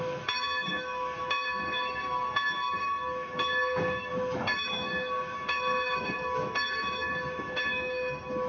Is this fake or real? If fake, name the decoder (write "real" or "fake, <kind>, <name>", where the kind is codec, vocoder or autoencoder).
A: fake, autoencoder, DAC-VAE